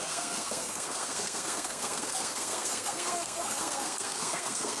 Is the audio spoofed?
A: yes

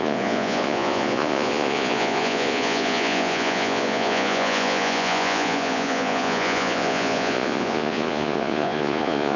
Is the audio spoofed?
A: yes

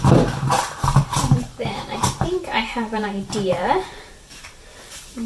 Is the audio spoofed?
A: yes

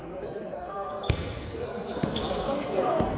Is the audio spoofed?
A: yes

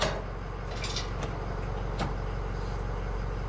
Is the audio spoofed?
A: no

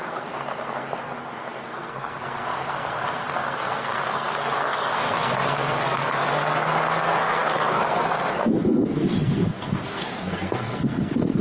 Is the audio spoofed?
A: yes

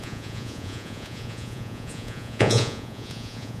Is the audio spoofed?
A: yes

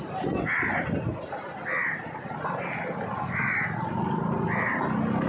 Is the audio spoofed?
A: no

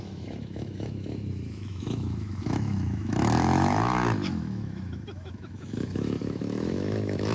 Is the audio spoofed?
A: yes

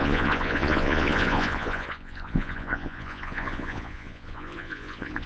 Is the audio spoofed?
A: yes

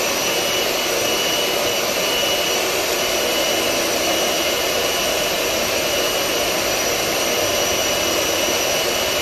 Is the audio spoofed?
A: yes